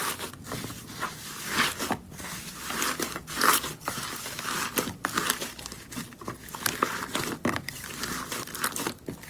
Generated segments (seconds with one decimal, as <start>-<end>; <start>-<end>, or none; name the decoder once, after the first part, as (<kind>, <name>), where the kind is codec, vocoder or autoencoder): none